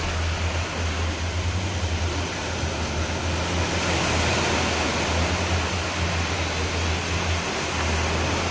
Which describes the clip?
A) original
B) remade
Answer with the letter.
A